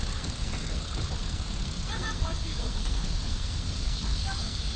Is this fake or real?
fake